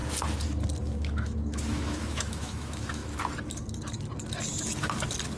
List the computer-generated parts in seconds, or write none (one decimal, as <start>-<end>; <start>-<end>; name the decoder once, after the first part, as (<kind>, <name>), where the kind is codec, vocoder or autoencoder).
0.8-3.0 (autoencoder, DAC-VAE)